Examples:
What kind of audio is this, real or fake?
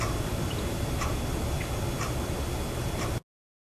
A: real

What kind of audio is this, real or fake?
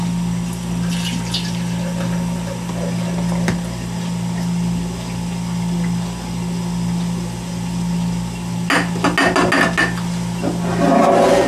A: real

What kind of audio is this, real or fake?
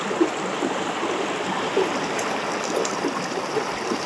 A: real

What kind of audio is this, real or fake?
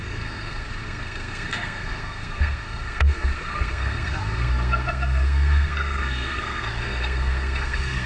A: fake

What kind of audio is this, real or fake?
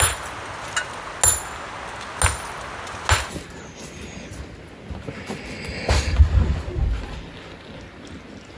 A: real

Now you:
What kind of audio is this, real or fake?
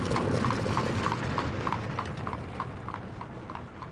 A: real